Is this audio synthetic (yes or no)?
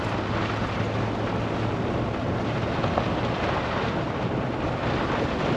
no